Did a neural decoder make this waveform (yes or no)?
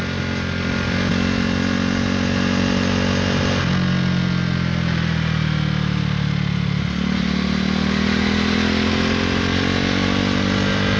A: no